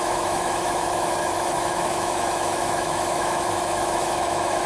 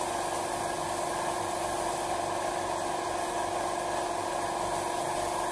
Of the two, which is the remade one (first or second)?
first